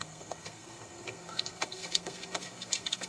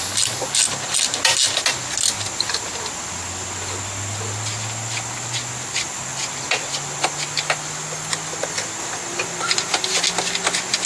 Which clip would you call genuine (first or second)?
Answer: second